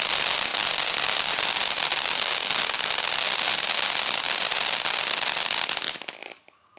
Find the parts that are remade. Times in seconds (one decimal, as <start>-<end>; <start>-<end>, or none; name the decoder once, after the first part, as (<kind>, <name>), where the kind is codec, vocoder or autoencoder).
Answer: none